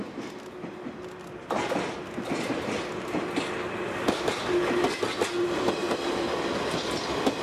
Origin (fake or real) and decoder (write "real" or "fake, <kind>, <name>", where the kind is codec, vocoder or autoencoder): real